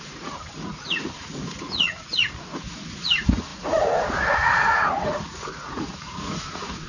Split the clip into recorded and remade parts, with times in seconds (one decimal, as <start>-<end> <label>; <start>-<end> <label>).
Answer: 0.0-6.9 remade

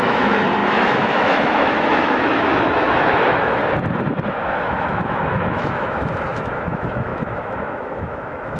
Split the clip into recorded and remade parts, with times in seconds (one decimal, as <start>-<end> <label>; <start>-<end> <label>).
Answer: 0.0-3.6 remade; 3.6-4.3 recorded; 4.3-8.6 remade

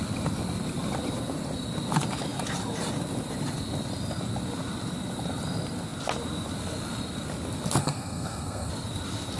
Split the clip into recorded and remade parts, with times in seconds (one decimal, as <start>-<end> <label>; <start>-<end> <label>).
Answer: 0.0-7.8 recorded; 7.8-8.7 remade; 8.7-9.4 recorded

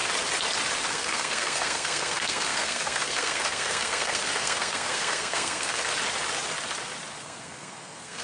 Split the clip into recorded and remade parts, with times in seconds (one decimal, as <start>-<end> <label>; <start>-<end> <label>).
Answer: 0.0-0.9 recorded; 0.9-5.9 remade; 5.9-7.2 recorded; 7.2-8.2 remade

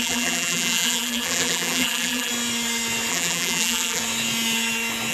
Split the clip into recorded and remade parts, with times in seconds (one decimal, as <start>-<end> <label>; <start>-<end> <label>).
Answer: 0.0-2.3 remade; 2.3-3.1 recorded; 3.1-4.0 remade; 4.0-5.1 recorded

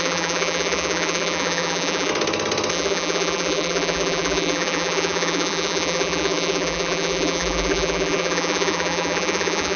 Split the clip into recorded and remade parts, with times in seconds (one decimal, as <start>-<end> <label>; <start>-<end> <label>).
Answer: 0.0-2.1 remade; 2.1-2.7 recorded; 2.7-9.8 remade

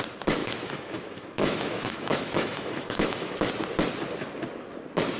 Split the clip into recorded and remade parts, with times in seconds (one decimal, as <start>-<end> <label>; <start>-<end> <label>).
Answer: 0.0-0.4 recorded; 0.4-3.5 remade; 3.5-5.2 recorded